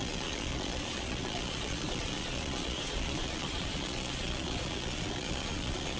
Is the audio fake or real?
fake